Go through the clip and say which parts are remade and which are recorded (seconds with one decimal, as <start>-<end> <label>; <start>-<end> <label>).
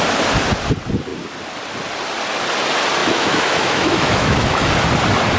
0.0-3.0 recorded; 3.0-4.7 remade; 4.7-5.4 recorded